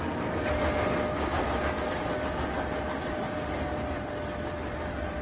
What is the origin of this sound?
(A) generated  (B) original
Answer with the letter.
B